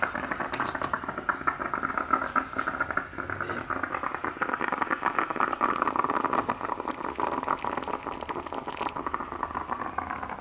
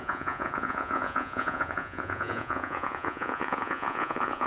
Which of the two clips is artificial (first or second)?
second